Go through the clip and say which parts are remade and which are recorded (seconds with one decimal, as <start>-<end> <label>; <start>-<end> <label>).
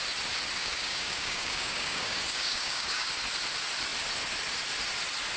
0.0-0.6 recorded; 0.6-3.1 remade; 3.1-5.4 recorded